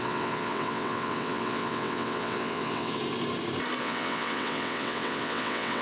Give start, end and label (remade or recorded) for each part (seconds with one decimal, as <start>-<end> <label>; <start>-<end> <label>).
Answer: 0.0-3.0 remade; 3.0-3.8 recorded; 3.8-5.8 remade